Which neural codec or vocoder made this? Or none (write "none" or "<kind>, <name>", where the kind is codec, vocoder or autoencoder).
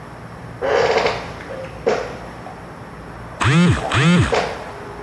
none